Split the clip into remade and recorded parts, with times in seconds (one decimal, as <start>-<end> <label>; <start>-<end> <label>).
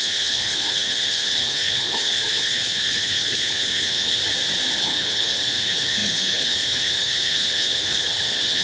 0.0-4.2 remade; 4.2-4.8 recorded; 4.8-8.6 remade